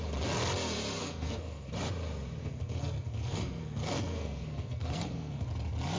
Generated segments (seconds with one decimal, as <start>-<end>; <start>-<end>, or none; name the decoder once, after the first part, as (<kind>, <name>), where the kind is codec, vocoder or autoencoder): 1.0-1.7 (codec, SNAC); 2.4-5.5